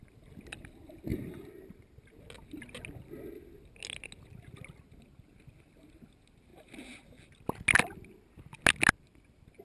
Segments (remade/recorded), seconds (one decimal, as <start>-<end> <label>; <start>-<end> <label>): 0.0-1.1 remade; 1.1-5.6 recorded; 5.6-6.5 remade; 6.5-9.0 recorded; 9.0-9.6 remade

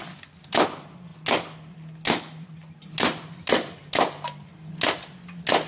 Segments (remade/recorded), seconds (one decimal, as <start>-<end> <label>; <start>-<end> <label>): 0.0-5.7 recorded

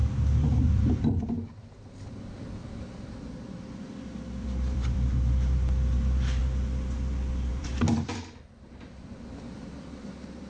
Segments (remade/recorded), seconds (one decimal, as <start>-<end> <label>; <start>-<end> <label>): 0.0-0.6 recorded; 0.6-6.4 remade; 6.4-7.5 recorded; 7.5-10.5 remade

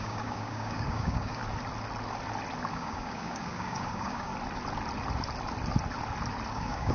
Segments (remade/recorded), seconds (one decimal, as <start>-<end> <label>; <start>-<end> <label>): 0.0-1.4 remade; 1.4-2.7 recorded; 2.7-4.3 remade; 4.3-6.5 recorded; 6.5-6.9 remade

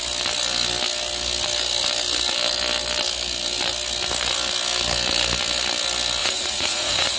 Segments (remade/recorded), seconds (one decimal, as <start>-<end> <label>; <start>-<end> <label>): 0.0-6.2 recorded; 6.2-7.2 remade

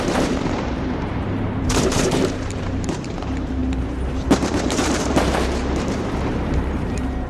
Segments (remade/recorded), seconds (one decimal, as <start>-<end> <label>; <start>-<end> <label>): 0.0-7.3 remade

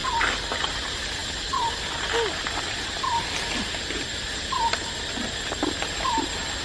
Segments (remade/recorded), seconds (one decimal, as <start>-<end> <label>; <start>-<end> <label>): 0.0-6.6 recorded